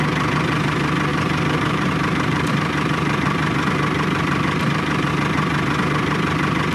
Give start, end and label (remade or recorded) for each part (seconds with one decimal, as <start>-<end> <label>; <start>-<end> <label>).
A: 0.0-1.1 recorded; 1.1-5.1 remade; 5.1-6.7 recorded